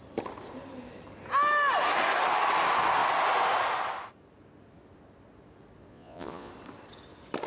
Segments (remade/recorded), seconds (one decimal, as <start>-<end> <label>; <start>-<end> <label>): 0.0-5.9 recorded; 5.9-6.5 remade; 6.5-7.5 recorded